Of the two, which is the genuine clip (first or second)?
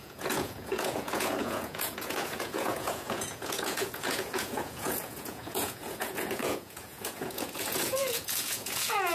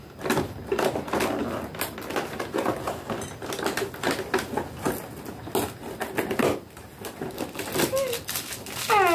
second